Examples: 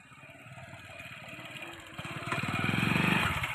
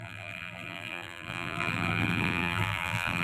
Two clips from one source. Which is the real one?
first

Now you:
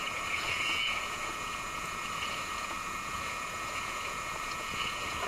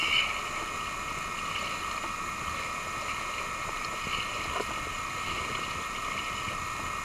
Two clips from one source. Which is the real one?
second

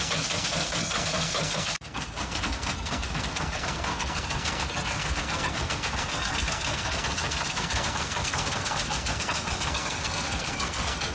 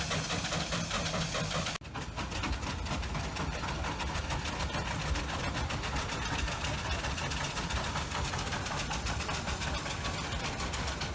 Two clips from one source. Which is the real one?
second